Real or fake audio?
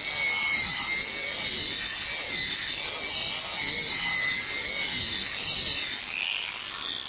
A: real